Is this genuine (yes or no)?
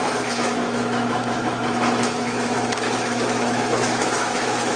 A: no